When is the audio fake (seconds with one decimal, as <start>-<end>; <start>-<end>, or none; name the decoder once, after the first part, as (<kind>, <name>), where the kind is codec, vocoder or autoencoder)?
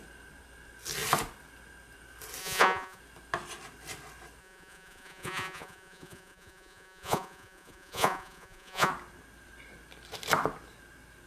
2.4-3.0 (vocoder, Vocos); 4.4-8.9